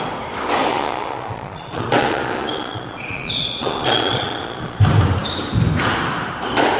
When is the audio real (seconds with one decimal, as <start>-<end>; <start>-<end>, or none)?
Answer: 0.0-0.7; 4.8-6.8